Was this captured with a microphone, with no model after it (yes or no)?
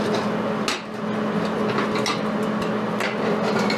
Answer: yes